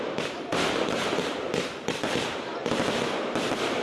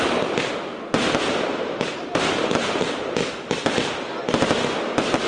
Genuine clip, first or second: second